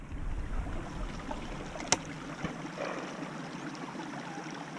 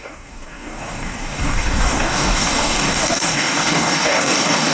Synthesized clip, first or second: second